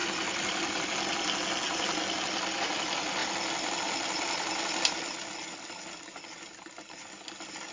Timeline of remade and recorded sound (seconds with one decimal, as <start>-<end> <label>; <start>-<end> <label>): 0.0-7.7 recorded